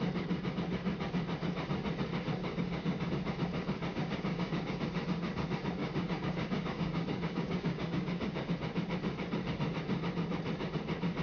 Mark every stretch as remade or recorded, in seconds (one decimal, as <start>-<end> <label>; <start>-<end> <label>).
0.0-2.4 recorded; 2.4-3.1 remade; 3.1-3.9 recorded; 3.9-4.8 remade; 4.8-5.8 recorded; 5.8-8.5 remade; 8.5-11.2 recorded